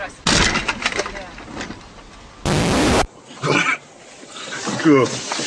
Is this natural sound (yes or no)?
yes